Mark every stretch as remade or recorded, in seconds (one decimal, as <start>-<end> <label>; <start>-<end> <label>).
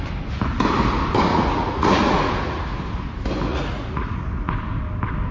0.0-1.3 recorded; 1.3-2.6 remade; 2.6-3.5 recorded; 3.5-4.5 remade; 4.5-5.3 recorded